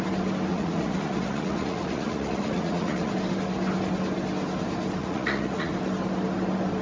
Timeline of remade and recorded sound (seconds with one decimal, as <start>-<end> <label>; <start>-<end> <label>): 0.0-0.5 recorded; 0.5-3.1 remade; 3.1-5.0 recorded; 5.0-5.7 remade; 5.7-6.8 recorded